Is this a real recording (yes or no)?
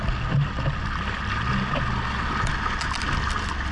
yes